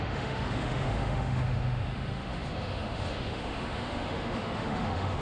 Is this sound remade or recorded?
remade